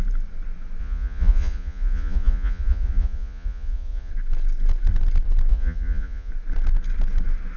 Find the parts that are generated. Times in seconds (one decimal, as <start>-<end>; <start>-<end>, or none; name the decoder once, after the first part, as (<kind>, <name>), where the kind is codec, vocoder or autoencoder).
0.8-4.1 (vocoder, Vocos); 5.5-6.3